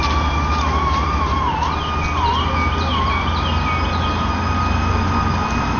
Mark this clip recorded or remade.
recorded